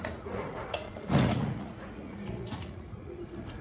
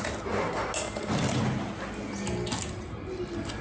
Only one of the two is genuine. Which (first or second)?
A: second